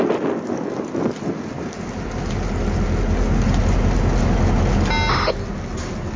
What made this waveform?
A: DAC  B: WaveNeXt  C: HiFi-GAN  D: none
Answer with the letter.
D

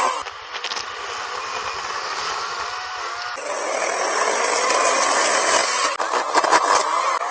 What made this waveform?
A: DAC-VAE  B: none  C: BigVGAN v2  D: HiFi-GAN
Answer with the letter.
B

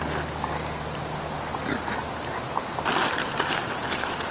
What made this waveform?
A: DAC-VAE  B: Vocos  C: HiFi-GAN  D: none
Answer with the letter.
D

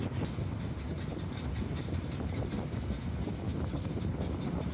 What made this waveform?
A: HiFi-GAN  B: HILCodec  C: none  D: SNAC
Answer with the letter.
C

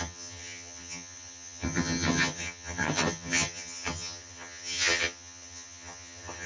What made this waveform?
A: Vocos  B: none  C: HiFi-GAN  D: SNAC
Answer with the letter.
C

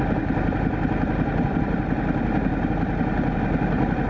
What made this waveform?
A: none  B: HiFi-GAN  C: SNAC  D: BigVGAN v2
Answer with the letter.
A